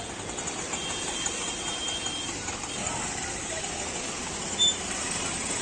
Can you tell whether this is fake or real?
real